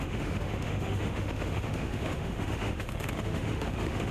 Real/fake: fake